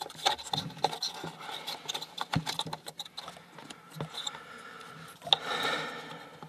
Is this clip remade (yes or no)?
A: no